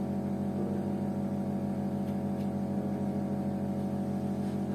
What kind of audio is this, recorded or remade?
recorded